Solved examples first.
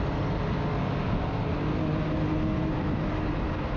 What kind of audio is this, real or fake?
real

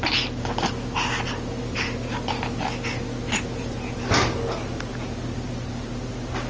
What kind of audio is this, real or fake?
real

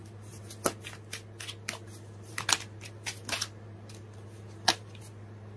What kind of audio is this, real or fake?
real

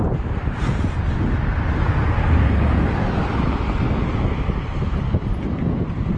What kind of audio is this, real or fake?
real